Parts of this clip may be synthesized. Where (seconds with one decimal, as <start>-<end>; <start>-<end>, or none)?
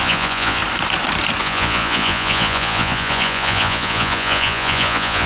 0.0-0.6; 1.4-5.3